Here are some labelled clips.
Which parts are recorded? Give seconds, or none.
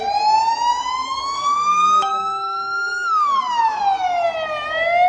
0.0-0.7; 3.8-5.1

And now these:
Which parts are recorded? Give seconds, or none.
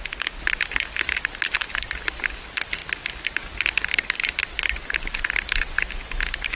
0.0-6.6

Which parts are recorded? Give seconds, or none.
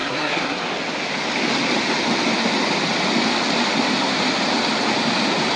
0.6-5.6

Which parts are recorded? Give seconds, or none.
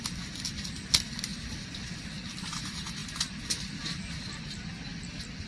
0.0-5.5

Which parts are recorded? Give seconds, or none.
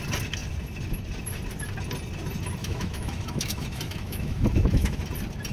0.0-2.6; 5.0-5.5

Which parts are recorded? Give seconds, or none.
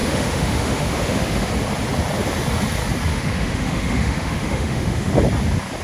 1.5-3.1; 5.1-5.8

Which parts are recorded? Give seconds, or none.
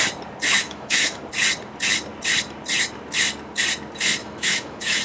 0.0-0.5; 1.2-4.2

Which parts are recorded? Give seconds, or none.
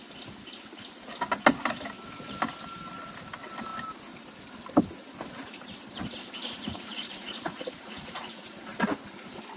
0.0-6.4; 8.6-9.6